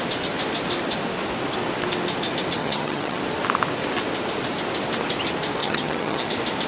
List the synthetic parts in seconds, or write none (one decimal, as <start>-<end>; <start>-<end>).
2.6-3.2; 5.6-6.3